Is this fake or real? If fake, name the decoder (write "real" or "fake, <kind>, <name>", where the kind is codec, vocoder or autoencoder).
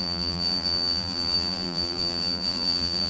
fake, vocoder, BigVGAN v2